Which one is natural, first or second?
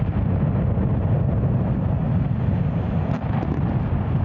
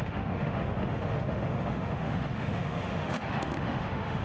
first